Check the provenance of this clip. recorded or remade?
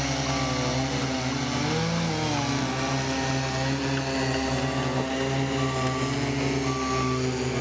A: recorded